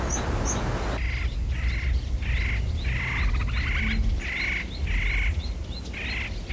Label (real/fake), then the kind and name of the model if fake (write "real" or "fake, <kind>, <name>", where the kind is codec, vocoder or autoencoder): real